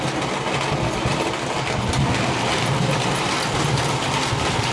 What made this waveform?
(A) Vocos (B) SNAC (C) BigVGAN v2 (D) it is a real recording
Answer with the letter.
D